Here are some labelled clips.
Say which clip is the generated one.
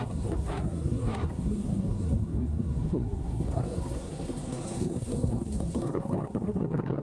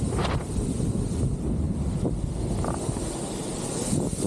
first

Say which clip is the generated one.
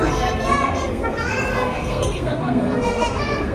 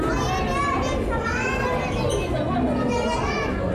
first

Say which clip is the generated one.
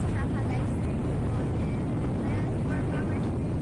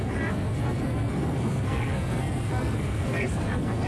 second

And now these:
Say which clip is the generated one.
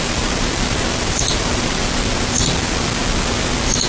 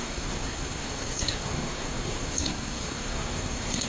second